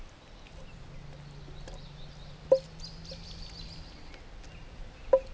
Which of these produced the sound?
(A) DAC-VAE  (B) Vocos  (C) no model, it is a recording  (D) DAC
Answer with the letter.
C